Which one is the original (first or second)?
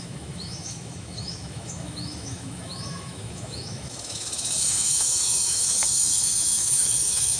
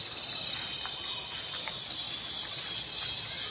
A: second